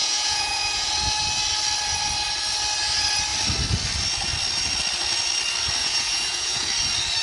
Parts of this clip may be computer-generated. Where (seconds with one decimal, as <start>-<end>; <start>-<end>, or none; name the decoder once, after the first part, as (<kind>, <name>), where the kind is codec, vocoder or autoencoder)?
0.0-0.9 (vocoder, Vocos); 5.8-6.7